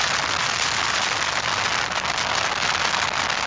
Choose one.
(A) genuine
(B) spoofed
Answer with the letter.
A